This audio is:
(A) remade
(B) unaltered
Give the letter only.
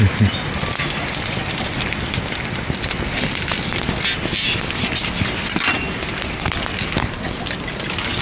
B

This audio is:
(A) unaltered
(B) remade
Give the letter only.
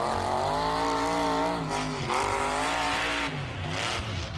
A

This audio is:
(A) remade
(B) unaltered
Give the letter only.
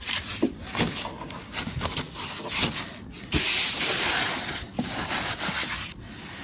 B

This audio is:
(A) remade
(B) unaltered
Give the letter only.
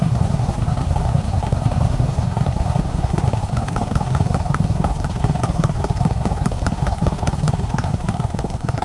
A